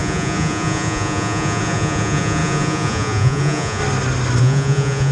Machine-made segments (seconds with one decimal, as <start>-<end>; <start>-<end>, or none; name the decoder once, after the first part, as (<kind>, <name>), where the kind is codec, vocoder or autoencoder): 0.0-3.8 (vocoder, Vocos); 4.4-5.1